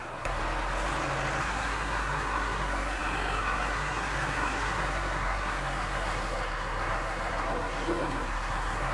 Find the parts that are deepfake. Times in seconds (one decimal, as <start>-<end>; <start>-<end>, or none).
0.0-0.4; 1.4-8.9